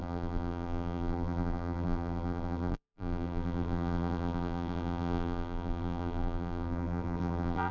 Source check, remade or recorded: remade